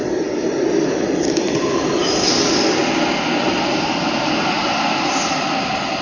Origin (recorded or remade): recorded